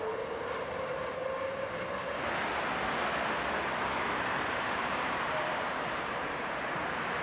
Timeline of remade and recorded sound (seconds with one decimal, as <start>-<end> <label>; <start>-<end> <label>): 0.0-1.2 remade; 1.2-4.1 recorded; 4.1-7.2 remade